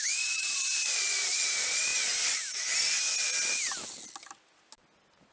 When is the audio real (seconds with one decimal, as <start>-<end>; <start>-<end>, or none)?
1.9-5.3